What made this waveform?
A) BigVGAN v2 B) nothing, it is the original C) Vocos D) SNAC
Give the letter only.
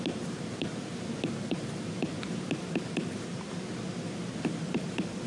A